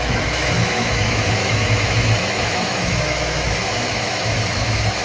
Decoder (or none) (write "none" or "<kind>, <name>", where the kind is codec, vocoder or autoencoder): autoencoder, DAC-VAE